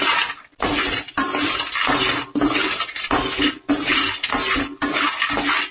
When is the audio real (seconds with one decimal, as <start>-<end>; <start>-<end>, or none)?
0.0-5.7